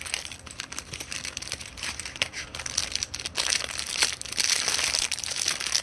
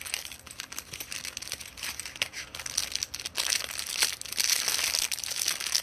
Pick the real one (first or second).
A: second